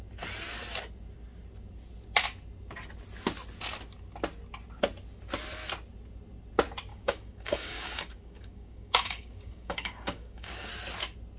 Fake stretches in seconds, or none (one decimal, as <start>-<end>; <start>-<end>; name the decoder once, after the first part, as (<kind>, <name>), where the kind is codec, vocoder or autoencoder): 6.9-10.7 (codec, DAC)